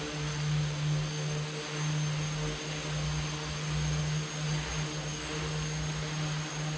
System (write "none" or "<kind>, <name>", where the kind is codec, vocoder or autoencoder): none